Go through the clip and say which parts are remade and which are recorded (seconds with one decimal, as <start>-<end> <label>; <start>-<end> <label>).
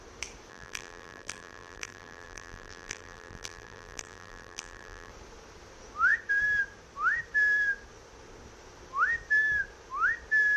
0.0-0.5 recorded; 0.5-5.1 remade; 5.1-10.6 recorded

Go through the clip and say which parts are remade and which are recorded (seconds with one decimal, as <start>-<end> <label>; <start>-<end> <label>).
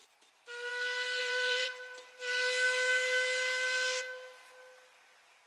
0.0-1.2 recorded; 1.2-2.0 remade; 2.0-5.5 recorded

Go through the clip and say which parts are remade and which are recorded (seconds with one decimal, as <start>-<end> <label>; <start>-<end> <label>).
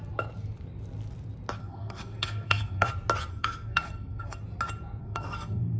0.0-1.6 recorded; 1.6-2.9 remade; 2.9-3.3 recorded; 3.3-4.4 remade; 4.4-5.0 recorded; 5.0-5.8 remade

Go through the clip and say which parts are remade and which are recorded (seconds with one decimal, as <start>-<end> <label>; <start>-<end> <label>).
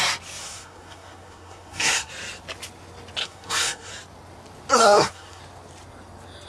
0.0-0.4 recorded; 0.4-2.1 remade; 2.1-3.2 recorded; 3.2-3.9 remade; 3.9-4.8 recorded; 4.8-5.4 remade; 5.4-6.5 recorded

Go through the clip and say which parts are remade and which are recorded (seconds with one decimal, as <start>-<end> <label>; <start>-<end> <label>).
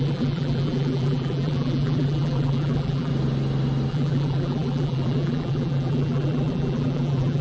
0.0-3.1 remade; 3.1-3.9 recorded; 3.9-7.4 remade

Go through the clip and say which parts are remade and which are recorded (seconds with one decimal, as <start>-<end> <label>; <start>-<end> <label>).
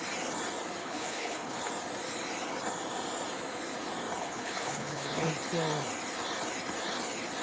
0.0-0.8 recorded; 0.8-1.7 remade; 1.7-4.2 recorded; 4.2-5.3 remade; 5.3-7.4 recorded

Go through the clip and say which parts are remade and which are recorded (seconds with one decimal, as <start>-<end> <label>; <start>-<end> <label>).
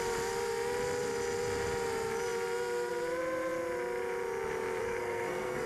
0.0-4.8 recorded; 4.8-5.7 remade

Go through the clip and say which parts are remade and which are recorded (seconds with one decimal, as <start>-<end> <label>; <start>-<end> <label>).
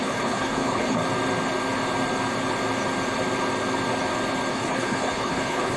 0.0-1.0 remade; 1.0-4.5 recorded; 4.5-5.8 remade